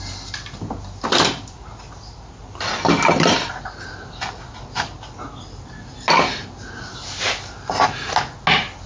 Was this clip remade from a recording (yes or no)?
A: no